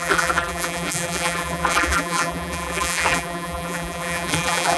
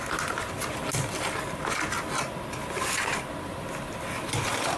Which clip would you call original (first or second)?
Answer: second